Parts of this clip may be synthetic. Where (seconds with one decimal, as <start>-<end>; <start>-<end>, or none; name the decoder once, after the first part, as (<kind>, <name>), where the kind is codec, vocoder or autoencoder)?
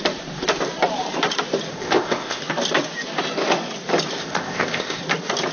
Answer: 1.7-2.4 (codec, ZipCodec); 4.2-5.0